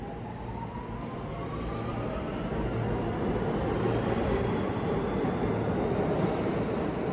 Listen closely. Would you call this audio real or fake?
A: real